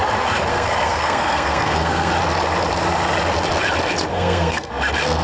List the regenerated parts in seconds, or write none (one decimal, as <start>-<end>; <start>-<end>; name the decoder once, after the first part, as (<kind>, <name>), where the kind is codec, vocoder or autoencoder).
0.5-2.1 (codec, SNAC); 4.1-4.7